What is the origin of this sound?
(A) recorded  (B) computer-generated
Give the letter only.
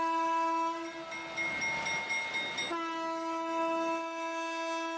A